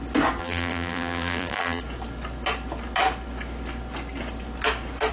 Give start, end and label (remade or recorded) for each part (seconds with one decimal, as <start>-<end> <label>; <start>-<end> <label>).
0.0-0.4 recorded; 0.4-1.8 remade; 1.8-5.1 recorded